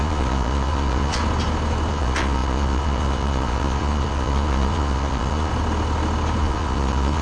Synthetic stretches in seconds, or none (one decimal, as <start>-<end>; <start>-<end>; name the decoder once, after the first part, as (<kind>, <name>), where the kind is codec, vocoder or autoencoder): 0.0-1.2 (vocoder, Vocos); 1.9-5.5; 6.4-7.2